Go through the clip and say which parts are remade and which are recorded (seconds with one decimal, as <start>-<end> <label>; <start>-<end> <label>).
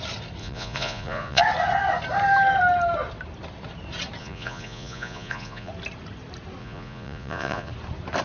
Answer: 0.0-0.4 recorded; 0.4-1.4 remade; 1.4-4.2 recorded; 4.2-5.7 remade; 5.7-6.6 recorded; 6.6-7.7 remade; 7.7-8.2 recorded